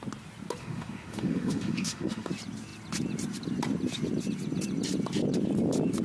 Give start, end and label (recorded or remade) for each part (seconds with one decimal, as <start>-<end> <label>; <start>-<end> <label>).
0.0-0.6 recorded; 0.6-2.3 remade; 2.3-6.0 recorded